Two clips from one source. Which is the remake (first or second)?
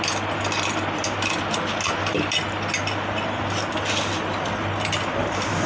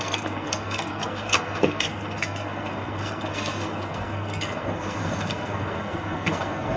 second